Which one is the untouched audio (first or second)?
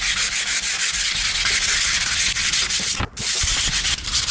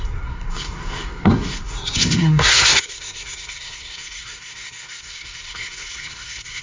first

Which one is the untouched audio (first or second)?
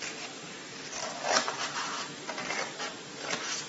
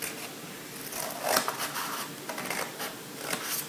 second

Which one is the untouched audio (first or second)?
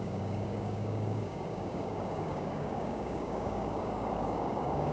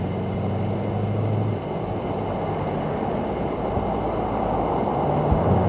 second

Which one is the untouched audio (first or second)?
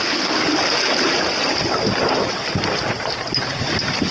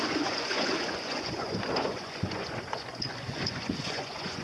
first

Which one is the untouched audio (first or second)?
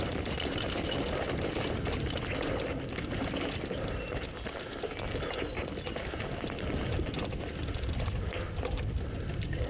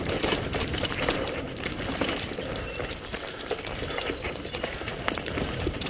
first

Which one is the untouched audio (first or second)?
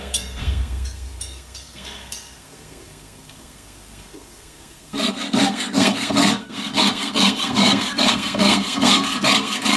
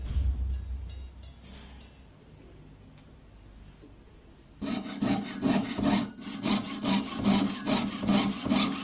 second